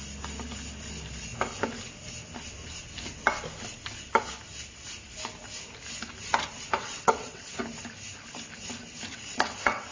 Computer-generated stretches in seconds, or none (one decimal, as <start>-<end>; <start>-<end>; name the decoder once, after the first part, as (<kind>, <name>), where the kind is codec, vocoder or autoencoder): 6.8-7.6 (vocoder, WaveNeXt); 9.1-9.9